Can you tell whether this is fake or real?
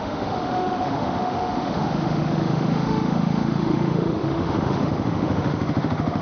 fake